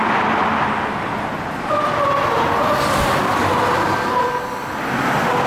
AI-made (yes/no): no